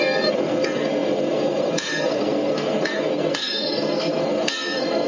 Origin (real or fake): fake